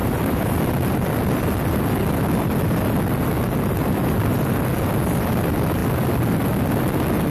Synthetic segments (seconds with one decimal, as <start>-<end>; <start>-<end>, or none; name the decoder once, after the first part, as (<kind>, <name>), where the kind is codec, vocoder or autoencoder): 0.0-0.5 (vocoder, BigVGAN v2)

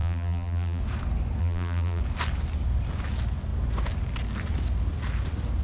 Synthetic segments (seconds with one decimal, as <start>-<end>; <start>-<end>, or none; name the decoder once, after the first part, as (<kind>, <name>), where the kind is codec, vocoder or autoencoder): 0.0-0.8 (vocoder, BigVGAN v2); 1.4-2.0

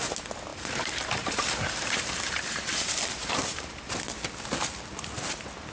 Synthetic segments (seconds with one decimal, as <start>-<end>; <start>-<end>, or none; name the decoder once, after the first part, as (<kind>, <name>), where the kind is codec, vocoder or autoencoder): 0.5-3.9 (vocoder, BigVGAN v2)

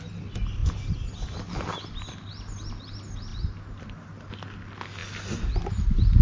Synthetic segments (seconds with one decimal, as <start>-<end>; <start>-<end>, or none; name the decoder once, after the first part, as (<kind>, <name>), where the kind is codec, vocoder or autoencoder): none

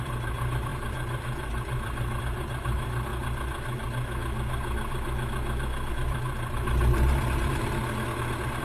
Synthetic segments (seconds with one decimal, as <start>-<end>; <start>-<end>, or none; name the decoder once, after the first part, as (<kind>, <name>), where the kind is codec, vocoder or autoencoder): 0.0-3.1 (vocoder, BigVGAN v2); 5.9-7.8

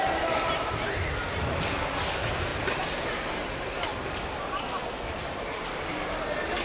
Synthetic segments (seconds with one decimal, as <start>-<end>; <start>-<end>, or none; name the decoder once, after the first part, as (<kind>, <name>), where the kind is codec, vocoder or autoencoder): 2.5-3.3 (vocoder, BigVGAN v2); 3.9-4.6